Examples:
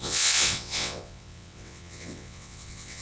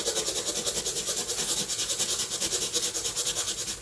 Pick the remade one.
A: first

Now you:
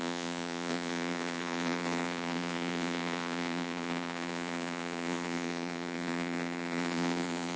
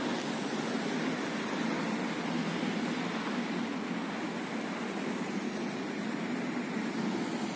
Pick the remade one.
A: first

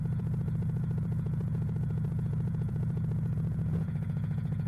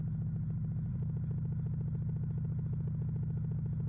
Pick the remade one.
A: first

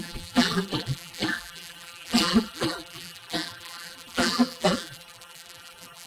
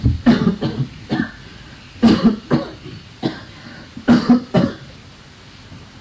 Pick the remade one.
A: first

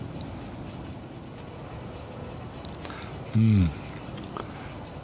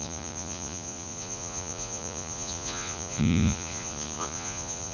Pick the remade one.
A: second